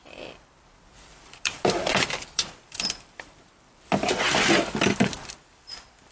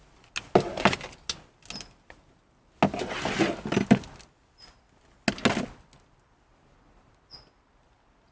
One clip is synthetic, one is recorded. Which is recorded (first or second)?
second